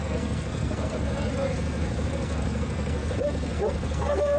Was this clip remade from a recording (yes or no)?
yes